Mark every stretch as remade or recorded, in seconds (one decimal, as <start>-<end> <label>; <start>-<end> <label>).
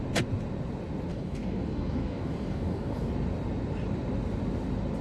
0.0-1.1 recorded; 1.1-3.1 remade; 3.1-5.0 recorded